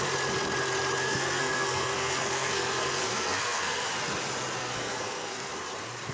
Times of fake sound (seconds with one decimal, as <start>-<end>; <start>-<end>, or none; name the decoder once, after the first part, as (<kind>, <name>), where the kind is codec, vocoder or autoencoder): 1.0-3.9 (codec, SNAC); 4.6-5.5